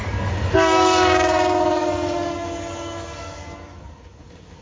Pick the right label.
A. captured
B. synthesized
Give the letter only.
B